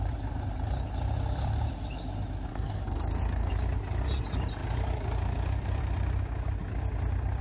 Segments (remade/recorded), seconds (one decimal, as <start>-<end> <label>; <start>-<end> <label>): 0.0-2.5 recorded; 2.5-3.5 remade; 3.5-7.4 recorded